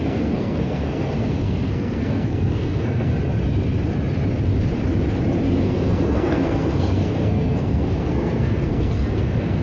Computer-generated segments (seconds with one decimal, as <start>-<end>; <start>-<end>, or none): 0.0-3.1; 5.6-9.6